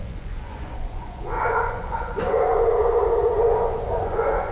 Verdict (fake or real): fake